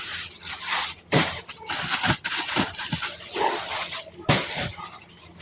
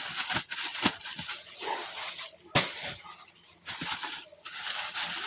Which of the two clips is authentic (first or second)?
second